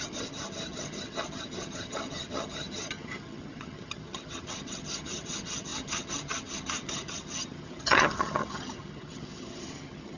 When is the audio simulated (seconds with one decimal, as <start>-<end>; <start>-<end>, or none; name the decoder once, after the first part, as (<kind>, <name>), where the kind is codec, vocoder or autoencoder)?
0.0-10.2 (vocoder, HiFi-GAN)